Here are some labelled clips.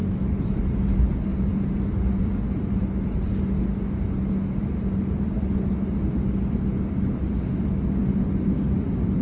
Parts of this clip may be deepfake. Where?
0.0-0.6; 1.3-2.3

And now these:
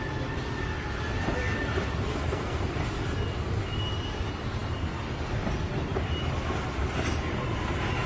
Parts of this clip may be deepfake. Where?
2.1-2.6

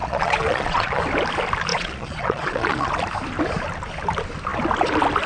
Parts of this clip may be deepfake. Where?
0.0-1.0; 1.7-2.9

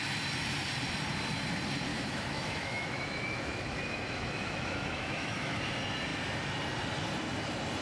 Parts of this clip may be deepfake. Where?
1.9-5.6